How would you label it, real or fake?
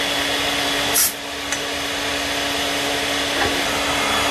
real